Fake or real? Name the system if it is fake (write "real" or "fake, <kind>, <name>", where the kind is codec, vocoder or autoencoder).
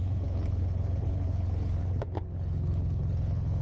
fake, codec, HILCodec